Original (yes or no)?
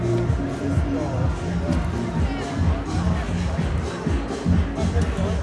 yes